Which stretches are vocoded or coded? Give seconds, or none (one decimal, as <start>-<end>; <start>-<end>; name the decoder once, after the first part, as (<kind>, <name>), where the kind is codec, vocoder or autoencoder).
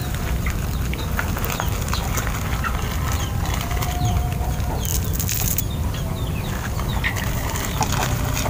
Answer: 4.9-5.6 (vocoder, BigVGAN v2); 6.9-7.9